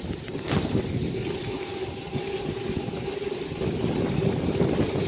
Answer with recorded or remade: remade